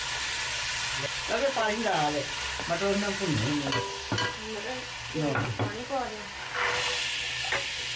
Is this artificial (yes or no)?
no